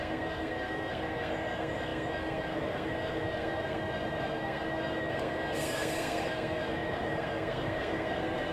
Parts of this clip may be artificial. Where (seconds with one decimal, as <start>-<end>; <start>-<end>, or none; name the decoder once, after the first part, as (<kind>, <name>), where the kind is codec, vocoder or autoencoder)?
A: 0.0-8.5 (codec, SNAC)